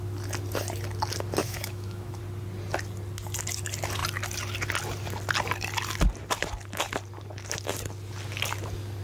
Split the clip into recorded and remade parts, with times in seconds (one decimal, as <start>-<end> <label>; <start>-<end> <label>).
0.0-1.4 recorded; 1.4-2.2 remade; 2.2-9.0 recorded